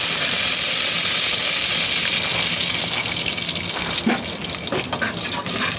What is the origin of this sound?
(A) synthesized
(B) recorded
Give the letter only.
B